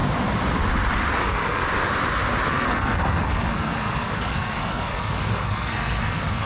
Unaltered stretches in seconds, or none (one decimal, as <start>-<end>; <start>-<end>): 0.0-1.2; 1.6-2.5